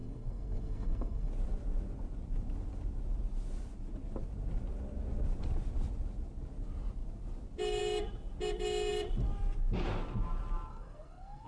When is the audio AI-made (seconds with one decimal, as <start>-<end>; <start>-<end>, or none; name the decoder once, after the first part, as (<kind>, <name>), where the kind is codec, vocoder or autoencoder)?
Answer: 0.0-1.3 (codec, SNAC); 10.7-11.5